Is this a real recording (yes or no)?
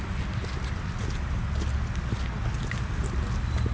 yes